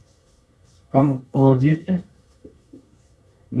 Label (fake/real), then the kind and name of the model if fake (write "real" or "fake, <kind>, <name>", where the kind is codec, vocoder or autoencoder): fake, codec, SNAC